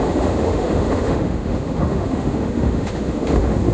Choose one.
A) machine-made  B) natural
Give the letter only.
A